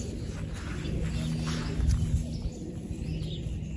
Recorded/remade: recorded